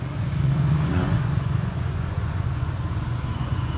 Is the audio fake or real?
fake